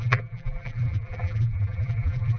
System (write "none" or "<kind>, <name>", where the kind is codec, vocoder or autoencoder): vocoder, BigVGAN v2